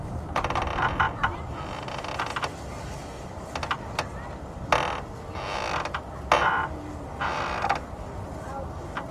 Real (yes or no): yes